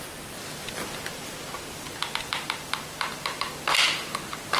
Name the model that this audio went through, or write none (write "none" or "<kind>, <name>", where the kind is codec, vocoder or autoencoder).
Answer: none